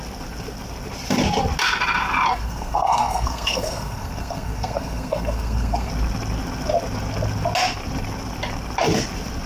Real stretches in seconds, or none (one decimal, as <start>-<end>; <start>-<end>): 0.0-2.3; 5.9-9.5